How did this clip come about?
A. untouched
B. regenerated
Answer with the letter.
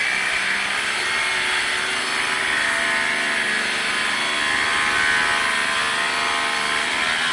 A